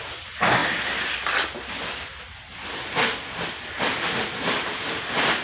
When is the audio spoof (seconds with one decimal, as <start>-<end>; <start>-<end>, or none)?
none